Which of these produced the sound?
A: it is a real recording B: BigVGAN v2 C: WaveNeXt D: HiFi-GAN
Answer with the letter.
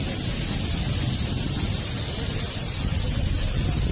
B